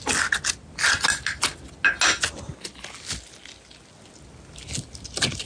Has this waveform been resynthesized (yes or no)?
no